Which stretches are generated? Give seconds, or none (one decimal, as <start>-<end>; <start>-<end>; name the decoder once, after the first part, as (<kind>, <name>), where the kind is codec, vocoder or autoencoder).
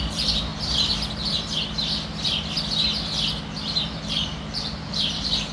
0.0-0.5 (vocoder, BigVGAN v2); 3.8-5.5